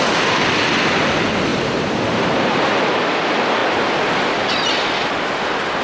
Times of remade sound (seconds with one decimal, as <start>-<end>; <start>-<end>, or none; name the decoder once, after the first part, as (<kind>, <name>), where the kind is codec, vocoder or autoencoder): 1.5-3.0 (vocoder, BigVGAN v2)